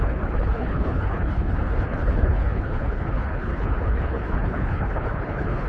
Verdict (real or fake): fake